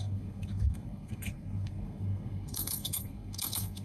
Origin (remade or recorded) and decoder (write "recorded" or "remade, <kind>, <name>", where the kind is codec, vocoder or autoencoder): remade, codec, SNAC